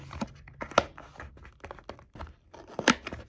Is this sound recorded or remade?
recorded